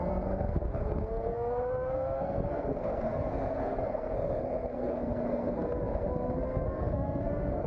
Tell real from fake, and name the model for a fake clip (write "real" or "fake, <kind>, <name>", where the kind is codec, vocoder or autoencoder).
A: fake, codec, SNAC